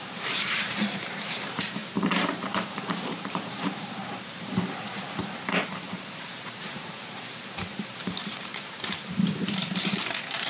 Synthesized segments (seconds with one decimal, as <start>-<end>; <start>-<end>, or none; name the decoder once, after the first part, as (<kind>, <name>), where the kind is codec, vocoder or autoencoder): 0.0-10.5 (vocoder, BigVGAN v2)